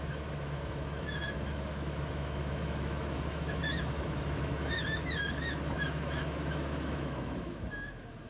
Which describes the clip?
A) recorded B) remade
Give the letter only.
B